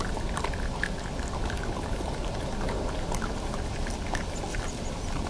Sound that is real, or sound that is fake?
real